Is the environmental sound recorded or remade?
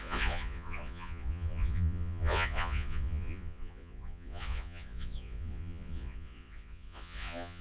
remade